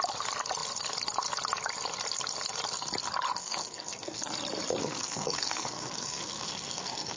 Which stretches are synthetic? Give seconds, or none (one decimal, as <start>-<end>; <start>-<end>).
3.4-4.2; 4.8-7.2